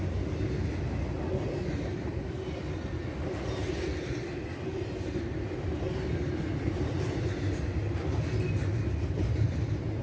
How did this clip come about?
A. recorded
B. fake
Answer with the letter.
A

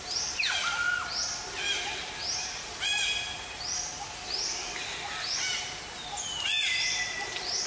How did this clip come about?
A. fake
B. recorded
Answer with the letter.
B